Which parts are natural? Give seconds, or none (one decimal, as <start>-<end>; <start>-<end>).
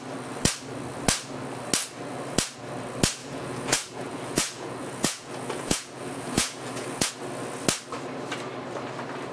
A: 0.0-3.2; 7.1-9.3